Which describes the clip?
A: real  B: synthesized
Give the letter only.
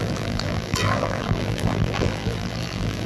B